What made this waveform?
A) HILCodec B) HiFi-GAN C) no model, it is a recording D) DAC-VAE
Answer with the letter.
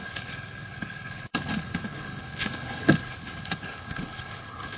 A